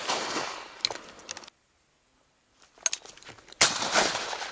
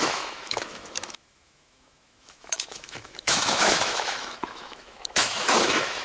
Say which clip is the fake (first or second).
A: second